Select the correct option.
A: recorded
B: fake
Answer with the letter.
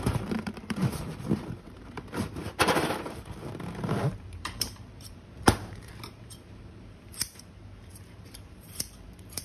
B